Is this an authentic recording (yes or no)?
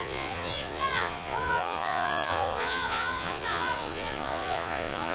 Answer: no